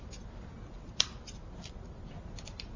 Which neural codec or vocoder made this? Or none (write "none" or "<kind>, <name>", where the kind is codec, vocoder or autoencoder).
vocoder, BigVGAN v2